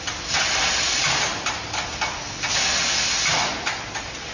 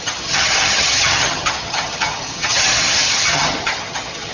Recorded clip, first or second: first